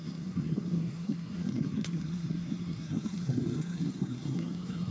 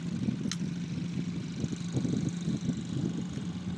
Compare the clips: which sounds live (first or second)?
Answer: second